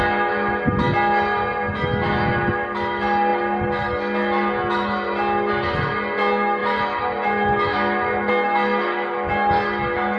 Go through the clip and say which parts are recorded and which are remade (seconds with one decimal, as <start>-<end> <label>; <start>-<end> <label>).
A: 0.0-10.2 recorded